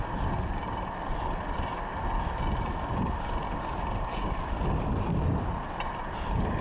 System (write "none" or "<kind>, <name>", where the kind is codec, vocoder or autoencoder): none